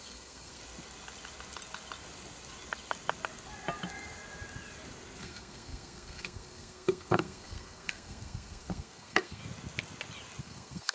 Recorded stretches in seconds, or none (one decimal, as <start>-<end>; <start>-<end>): 0.6-5.2; 9.4-10.4